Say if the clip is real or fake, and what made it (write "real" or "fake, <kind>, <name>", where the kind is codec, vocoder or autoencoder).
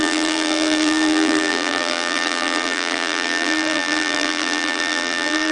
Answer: fake, vocoder, BigVGAN v2